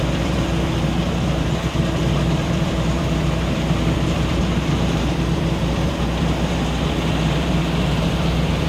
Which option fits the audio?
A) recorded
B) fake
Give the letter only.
B